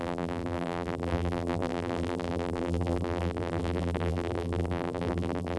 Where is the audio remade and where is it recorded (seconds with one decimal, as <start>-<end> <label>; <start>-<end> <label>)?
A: 0.0-5.6 remade